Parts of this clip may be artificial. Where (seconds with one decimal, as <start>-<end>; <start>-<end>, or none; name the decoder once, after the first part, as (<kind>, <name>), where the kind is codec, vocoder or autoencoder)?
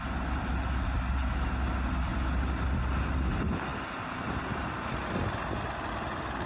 2.1-2.9 (vocoder, BigVGAN v2)